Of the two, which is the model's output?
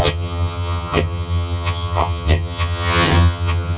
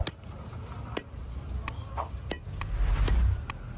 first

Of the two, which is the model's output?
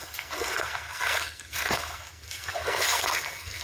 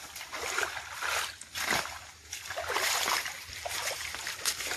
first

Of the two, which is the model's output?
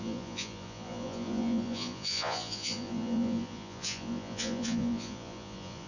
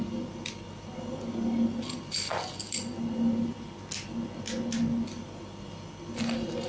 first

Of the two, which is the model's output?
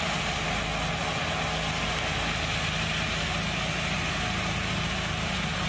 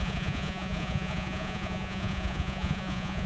second